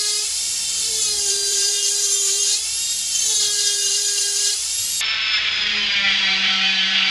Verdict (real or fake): fake